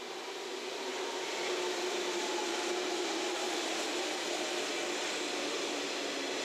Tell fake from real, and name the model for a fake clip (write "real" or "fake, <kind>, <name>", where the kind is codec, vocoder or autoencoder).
real